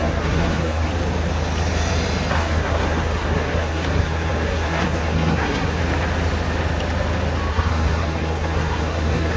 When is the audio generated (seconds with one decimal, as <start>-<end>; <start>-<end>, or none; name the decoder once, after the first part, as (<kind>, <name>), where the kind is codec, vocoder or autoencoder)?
0.0-0.9 (codec, SNAC); 2.3-5.8; 7.5-9.4